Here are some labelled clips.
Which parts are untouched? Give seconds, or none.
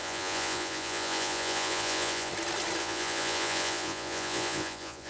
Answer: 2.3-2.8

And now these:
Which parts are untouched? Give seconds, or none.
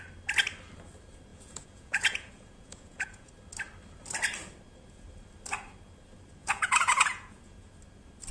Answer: 0.0-1.3; 3.3-6.4; 7.7-8.3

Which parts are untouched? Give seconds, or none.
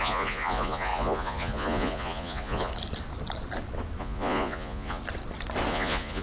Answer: 2.7-4.0; 5.0-5.7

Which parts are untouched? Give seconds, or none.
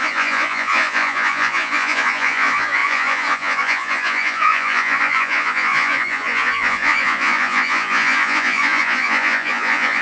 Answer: none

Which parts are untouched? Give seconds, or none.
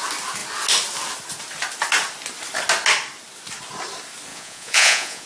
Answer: 0.0-4.3